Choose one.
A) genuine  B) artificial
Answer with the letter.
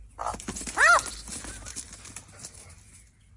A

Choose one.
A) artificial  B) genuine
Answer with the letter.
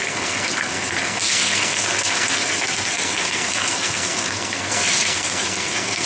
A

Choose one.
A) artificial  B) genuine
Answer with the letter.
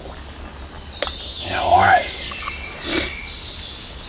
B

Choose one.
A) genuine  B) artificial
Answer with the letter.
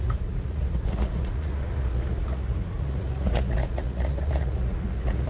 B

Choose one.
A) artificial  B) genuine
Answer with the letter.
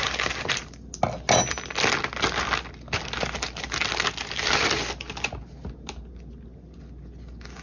B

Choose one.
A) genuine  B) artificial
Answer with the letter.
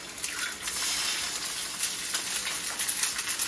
A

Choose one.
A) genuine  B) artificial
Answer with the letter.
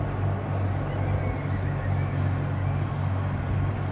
A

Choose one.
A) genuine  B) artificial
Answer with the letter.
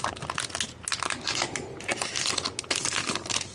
A